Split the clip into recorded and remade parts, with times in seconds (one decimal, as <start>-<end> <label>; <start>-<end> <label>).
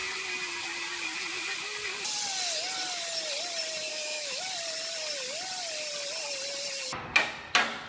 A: 0.0-3.9 recorded; 3.9-4.4 remade; 4.4-7.9 recorded